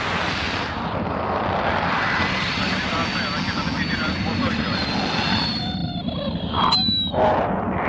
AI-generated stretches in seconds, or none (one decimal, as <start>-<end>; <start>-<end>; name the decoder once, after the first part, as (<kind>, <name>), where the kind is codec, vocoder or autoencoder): none